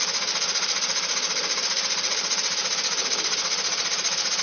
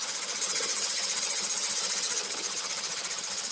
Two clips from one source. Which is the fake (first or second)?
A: second